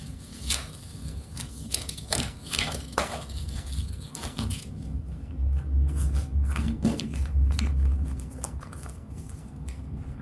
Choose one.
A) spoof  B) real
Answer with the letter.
A